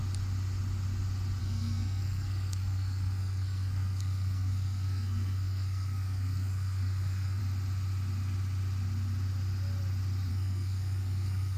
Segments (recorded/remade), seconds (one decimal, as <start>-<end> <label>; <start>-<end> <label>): 0.0-1.4 recorded; 1.4-7.4 remade; 7.4-10.3 recorded; 10.3-11.6 remade